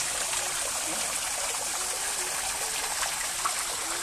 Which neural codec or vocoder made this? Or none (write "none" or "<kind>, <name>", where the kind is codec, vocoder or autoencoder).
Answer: none